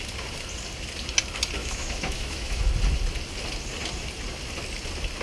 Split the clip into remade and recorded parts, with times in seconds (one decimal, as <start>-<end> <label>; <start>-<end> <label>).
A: 0.0-1.6 recorded; 1.6-2.6 remade; 2.6-5.2 recorded